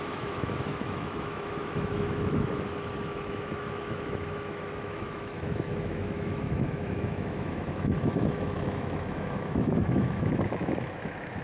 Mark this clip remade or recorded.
remade